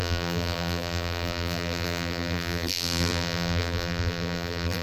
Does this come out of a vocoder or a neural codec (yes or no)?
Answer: yes